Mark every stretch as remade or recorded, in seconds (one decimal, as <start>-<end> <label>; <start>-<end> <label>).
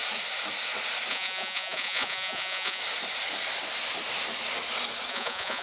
0.0-1.1 recorded; 1.1-2.8 remade; 2.8-5.1 recorded; 5.1-5.6 remade